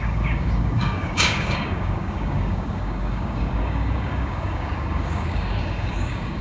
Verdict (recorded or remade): remade